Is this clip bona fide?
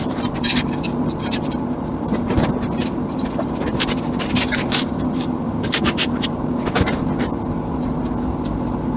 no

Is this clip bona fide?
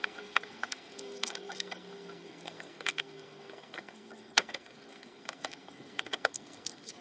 no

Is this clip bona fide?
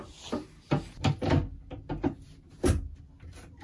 yes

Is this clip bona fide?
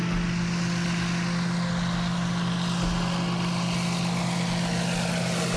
yes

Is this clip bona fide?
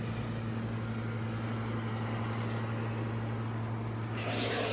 yes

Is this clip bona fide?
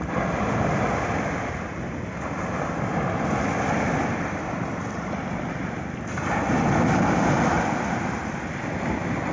yes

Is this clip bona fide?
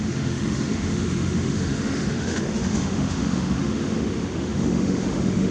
no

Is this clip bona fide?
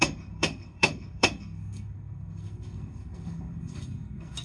no